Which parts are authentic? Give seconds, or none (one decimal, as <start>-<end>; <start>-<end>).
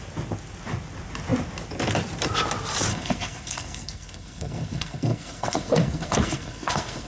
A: 0.0-2.9